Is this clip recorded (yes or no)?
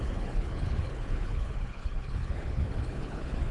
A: no